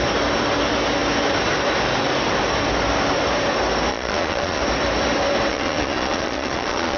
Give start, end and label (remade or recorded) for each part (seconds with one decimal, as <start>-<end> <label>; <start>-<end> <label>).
0.0-3.9 recorded; 3.9-4.6 remade; 4.6-5.5 recorded; 5.5-7.0 remade